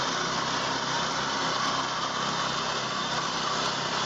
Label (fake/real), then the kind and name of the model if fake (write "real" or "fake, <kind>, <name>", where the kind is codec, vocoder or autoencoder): real